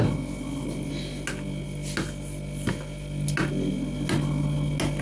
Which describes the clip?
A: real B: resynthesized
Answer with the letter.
A